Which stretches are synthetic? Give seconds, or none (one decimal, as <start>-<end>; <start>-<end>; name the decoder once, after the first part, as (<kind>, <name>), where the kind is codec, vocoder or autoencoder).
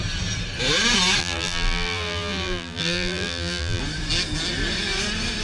1.2-3.8 (vocoder, BigVGAN v2)